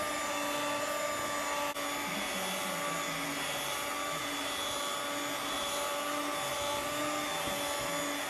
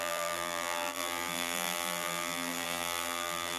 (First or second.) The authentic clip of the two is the first